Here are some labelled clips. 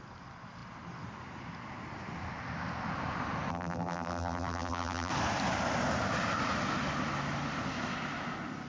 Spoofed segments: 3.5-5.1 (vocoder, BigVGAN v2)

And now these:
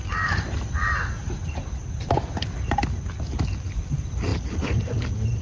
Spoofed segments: 4.3-4.8 (vocoder, BigVGAN v2)

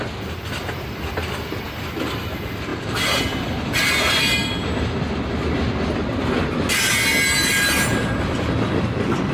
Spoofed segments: 2.7-4.1 (vocoder, BigVGAN v2)

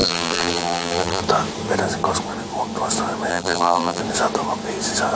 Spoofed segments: 0.0-1.2 (vocoder, BigVGAN v2); 3.3-4.0

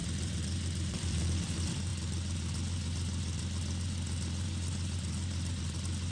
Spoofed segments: 0.0-1.2 (vocoder, BigVGAN v2)

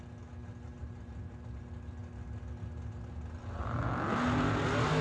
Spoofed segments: 0.8-1.6 (vocoder, BigVGAN v2)